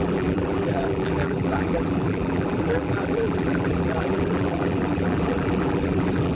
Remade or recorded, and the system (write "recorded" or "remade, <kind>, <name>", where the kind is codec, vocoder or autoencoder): remade, vocoder, BigVGAN v2